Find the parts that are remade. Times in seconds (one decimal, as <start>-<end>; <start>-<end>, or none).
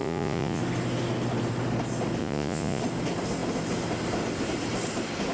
0.0-0.6; 2.2-2.8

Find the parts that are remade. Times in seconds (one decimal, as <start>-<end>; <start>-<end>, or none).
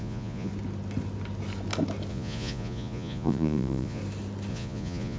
0.0-0.5; 2.1-4.0; 4.5-5.2